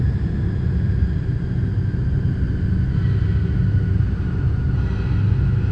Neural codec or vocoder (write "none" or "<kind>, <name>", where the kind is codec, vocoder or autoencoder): none